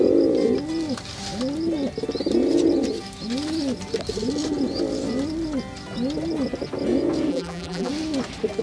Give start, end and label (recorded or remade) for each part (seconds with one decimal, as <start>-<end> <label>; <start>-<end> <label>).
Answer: 0.0-7.3 recorded; 7.3-7.9 remade; 7.9-8.6 recorded